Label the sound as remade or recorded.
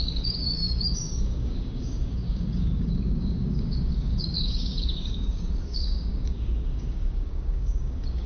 remade